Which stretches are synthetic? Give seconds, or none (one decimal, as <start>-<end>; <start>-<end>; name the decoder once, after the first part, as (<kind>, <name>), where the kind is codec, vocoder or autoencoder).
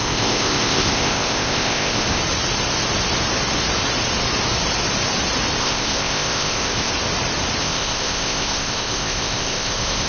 0.0-2.2 (codec, ZipCodec); 5.6-6.9; 7.6-10.1